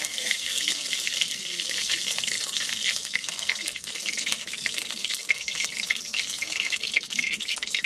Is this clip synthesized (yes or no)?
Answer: yes